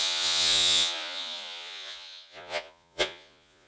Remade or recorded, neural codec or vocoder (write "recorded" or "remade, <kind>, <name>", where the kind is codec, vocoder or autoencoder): remade, vocoder, Vocos